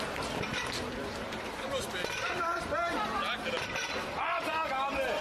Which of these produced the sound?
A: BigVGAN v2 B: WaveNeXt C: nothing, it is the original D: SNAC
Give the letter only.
C